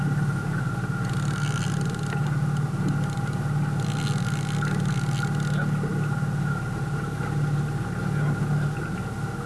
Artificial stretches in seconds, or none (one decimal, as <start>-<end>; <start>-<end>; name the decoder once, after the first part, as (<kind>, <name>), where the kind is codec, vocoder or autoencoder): none